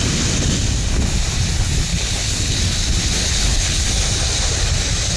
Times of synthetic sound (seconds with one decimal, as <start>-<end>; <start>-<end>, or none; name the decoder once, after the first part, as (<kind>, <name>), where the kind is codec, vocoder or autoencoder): 1.9-2.6 (codec, HILCodec); 3.2-3.8